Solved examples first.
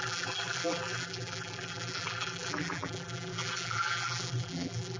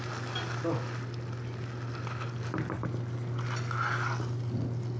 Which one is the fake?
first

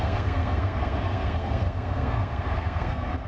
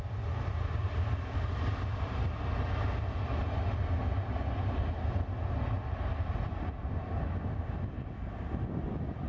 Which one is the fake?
first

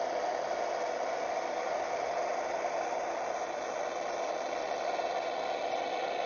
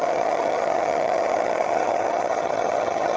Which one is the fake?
second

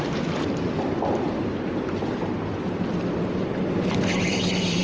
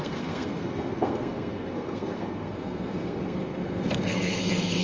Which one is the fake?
second